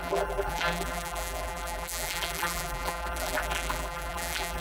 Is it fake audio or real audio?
fake